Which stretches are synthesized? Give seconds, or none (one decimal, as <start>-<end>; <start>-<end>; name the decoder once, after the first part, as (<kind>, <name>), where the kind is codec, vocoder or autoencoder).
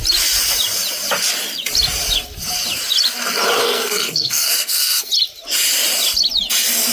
3.6-5.1 (codec, SNAC)